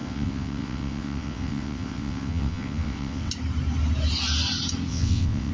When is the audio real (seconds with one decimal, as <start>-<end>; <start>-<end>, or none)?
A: 3.3-4.9